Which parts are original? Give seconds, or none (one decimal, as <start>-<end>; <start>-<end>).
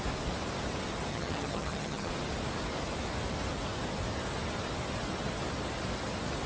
0.0-1.1; 2.1-6.5